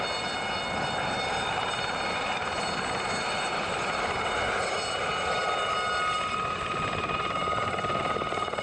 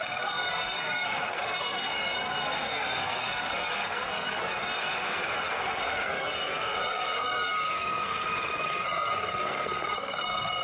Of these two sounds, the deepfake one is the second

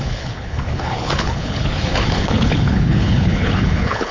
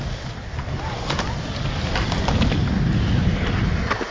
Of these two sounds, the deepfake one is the first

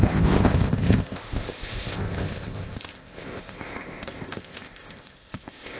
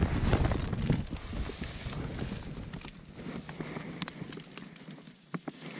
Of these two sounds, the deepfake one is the first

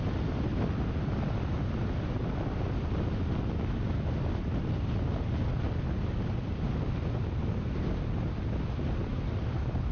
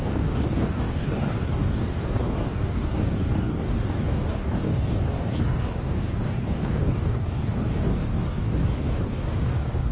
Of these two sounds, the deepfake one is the second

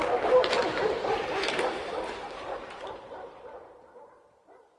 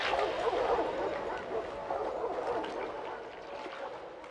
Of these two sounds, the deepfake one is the first